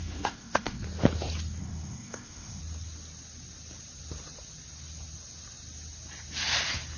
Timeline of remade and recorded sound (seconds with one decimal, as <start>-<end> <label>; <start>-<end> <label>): 0.0-0.8 remade; 0.8-1.6 recorded; 1.6-2.6 remade; 2.6-7.0 recorded